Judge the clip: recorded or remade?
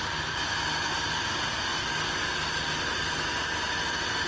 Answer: recorded